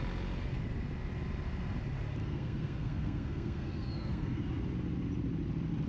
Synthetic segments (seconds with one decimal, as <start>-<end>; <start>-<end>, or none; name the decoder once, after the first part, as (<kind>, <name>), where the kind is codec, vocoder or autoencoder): 2.2-4.4 (codec, SNAC)